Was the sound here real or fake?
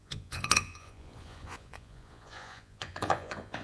fake